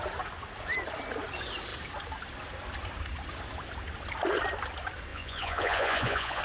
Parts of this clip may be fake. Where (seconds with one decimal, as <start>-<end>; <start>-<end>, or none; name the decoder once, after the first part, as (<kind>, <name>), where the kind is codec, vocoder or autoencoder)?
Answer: 5.1-6.4 (vocoder, Vocos)